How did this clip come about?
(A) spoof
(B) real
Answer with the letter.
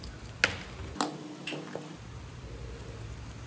B